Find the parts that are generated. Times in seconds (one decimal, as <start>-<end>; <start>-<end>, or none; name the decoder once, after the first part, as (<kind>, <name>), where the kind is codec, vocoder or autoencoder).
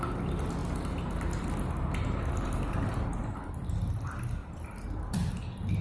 4.4-5.3 (vocoder, BigVGAN v2)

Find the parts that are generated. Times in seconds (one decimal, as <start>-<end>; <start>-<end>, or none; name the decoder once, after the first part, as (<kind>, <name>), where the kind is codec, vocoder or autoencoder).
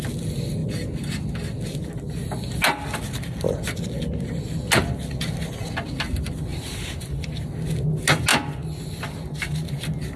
6.5-7.5 (vocoder, BigVGAN v2)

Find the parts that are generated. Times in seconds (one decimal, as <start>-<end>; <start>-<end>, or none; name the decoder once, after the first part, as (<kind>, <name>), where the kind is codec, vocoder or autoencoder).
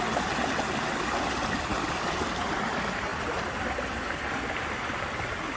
none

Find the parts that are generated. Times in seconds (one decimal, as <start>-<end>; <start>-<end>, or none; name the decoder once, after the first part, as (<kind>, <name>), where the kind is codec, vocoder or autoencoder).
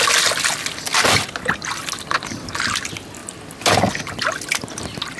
none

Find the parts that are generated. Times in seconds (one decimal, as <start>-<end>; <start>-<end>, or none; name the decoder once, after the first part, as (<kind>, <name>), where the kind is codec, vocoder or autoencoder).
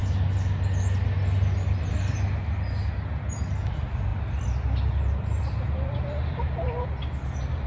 none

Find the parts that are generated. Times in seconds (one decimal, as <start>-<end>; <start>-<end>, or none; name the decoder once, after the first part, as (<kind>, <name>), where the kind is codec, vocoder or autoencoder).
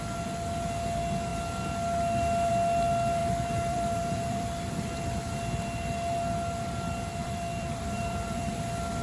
3.2-5.0 (vocoder, BigVGAN v2); 7.2-8.5